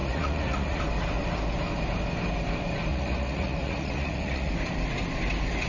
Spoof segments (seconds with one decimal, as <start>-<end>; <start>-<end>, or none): 0.0-0.8; 2.9-4.5